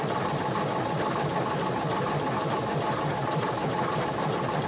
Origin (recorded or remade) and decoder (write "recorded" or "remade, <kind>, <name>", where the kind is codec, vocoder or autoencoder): recorded